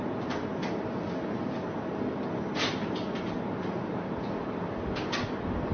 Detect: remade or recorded recorded